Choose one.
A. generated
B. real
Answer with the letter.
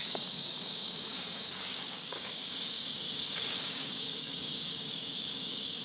A